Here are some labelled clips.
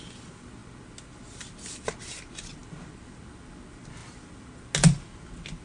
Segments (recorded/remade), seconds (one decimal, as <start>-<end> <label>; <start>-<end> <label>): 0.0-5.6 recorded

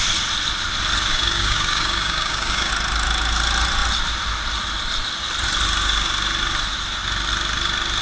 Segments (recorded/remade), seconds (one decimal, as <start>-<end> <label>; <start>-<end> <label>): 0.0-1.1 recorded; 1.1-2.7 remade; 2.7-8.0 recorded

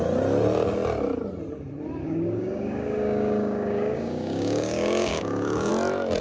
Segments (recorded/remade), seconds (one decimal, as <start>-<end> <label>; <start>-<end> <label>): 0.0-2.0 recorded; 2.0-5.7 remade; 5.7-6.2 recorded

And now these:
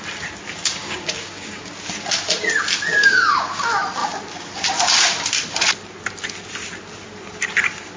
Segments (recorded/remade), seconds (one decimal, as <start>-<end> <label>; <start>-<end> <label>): 0.0-0.8 recorded; 0.8-1.7 remade; 1.7-3.0 recorded; 3.0-3.6 remade; 3.6-8.0 recorded